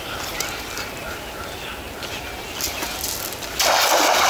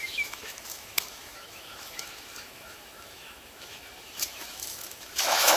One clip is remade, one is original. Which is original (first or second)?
first